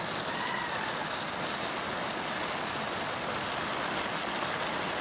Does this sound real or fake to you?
real